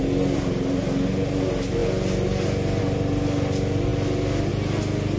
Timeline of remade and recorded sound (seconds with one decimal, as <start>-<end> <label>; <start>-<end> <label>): 0.0-5.2 recorded